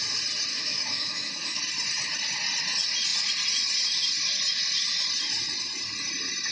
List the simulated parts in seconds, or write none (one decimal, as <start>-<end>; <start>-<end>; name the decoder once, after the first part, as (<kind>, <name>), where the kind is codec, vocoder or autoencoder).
0.5-1.6 (autoencoder, DAC-VAE)